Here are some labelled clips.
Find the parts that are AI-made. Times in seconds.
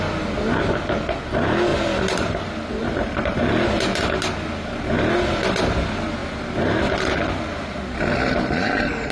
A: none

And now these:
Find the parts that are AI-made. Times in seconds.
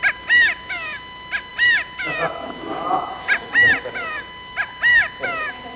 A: none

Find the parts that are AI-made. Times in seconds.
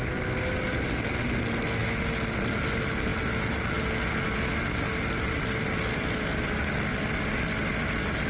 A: none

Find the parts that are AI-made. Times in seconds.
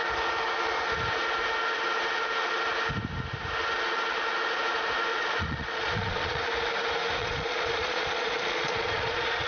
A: 5.1-6.4; 7.2-9.5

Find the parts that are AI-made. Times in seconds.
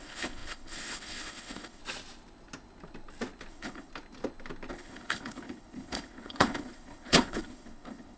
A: 0.0-1.8; 3.5-3.9; 4.7-8.2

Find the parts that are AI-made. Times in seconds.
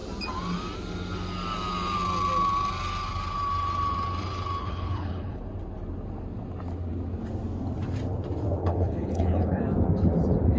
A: 4.6-5.4; 8.6-9.6